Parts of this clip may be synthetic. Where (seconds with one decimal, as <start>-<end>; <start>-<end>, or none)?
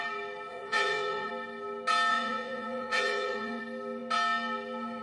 0.5-1.3; 2.1-3.6